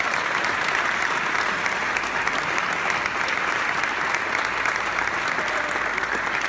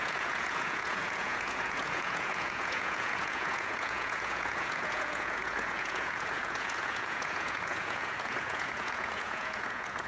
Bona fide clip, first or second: first